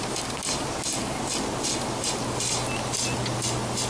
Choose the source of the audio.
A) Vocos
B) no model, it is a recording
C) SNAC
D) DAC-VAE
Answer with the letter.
B